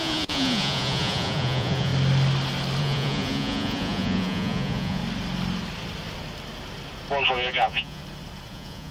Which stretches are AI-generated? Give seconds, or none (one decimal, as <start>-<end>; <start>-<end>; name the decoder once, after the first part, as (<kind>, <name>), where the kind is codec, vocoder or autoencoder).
0.0-1.9 (vocoder, Vocos); 2.8-5.0; 7.3-8.0; 8.5-8.9